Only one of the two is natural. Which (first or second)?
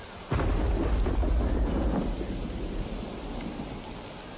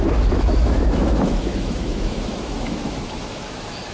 first